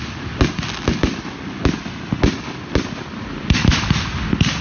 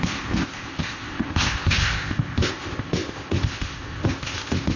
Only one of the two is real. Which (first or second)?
first